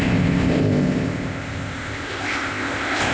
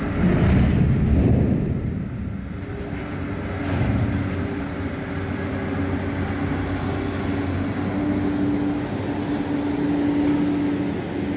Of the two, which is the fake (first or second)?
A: first